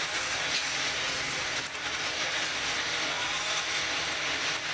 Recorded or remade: recorded